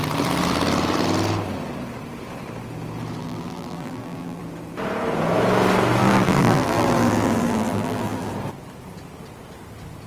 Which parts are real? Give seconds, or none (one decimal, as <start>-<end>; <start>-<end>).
0.0-3.2; 4.4-6.0; 8.3-10.1